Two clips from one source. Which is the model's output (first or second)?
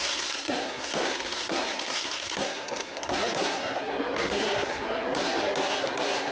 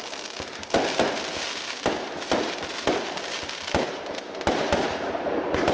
first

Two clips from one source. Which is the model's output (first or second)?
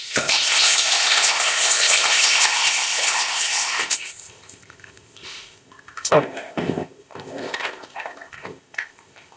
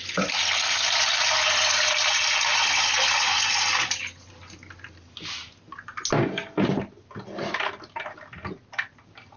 first